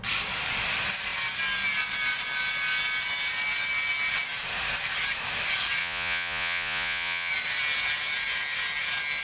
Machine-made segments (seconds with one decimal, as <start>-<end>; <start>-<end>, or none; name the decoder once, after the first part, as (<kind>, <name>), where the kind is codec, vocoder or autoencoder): 5.8-7.3 (vocoder, Vocos)